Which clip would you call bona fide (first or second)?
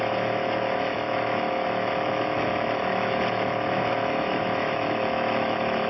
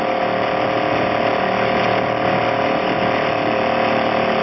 second